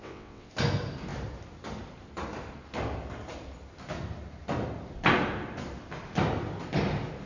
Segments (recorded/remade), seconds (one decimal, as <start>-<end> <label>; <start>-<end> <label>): 0.0-0.5 remade; 0.5-7.3 recorded